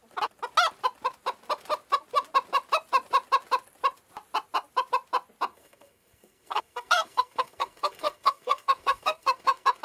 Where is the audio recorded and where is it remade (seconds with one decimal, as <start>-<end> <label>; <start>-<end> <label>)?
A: 0.0-5.5 recorded; 5.5-9.8 remade